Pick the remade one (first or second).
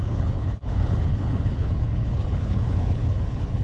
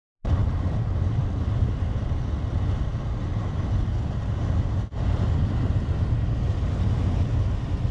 first